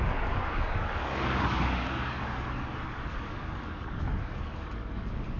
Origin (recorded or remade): remade